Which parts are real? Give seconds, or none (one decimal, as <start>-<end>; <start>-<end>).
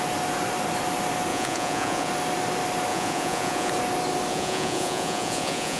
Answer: 0.0-1.3; 2.1-2.9; 3.7-4.3